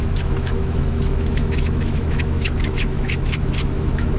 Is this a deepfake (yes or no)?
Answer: yes